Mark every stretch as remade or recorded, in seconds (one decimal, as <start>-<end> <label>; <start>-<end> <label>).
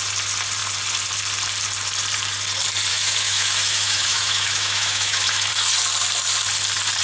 0.0-2.9 recorded; 2.9-5.5 remade; 5.5-7.0 recorded